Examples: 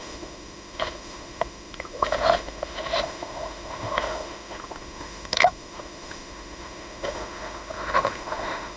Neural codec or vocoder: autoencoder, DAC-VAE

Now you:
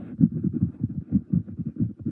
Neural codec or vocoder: none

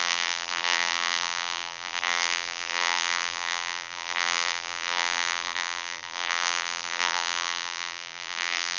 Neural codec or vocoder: vocoder, BigVGAN v2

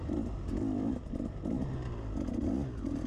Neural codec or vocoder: vocoder, BigVGAN v2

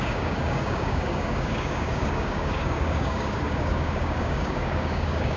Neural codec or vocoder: codec, DAC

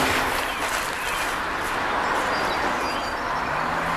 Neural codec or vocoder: none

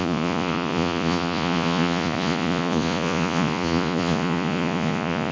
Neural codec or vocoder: vocoder, Vocos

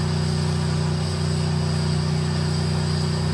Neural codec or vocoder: none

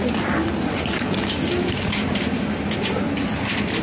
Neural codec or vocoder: none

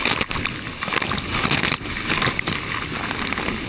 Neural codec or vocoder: none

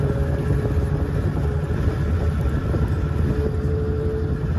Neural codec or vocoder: none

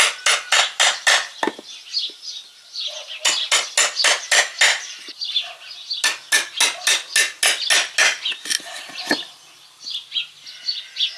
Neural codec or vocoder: none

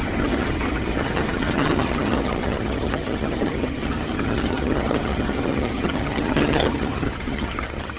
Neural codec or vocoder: vocoder, HiFi-GAN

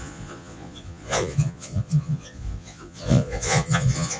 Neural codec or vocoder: vocoder, Vocos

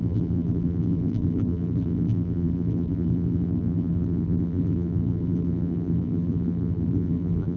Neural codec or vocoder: vocoder, BigVGAN v2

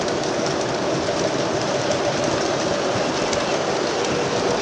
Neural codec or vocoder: none